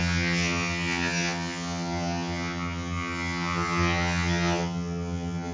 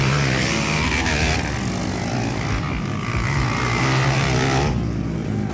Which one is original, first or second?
second